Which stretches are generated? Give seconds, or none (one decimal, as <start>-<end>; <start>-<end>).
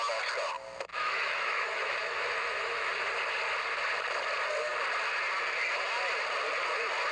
0.9-2.9